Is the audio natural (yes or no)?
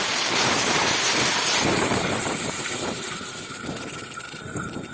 no